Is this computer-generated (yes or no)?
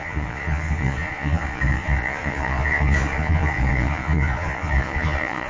yes